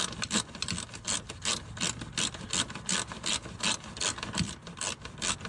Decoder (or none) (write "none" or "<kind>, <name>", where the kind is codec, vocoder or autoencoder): none